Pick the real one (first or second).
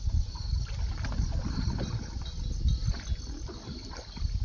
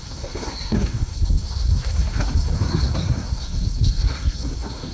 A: first